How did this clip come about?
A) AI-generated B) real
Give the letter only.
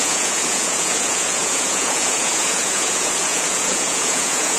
A